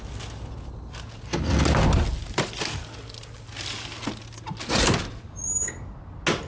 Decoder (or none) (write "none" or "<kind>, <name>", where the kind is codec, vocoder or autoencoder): none